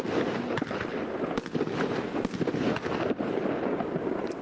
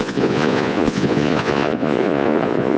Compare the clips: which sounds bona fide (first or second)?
first